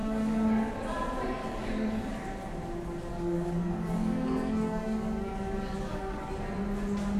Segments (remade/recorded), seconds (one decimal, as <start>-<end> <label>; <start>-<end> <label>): 0.0-0.7 remade; 0.7-1.4 recorded; 1.4-2.1 remade; 2.1-3.1 recorded; 3.1-6.3 remade; 6.3-7.2 recorded